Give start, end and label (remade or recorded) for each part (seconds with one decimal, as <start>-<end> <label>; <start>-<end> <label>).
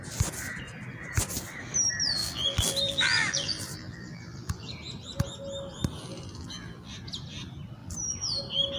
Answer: 0.0-2.2 recorded; 2.2-4.7 remade; 4.7-6.0 recorded; 6.0-6.9 remade; 6.9-7.8 recorded; 7.8-8.4 remade; 8.4-8.8 recorded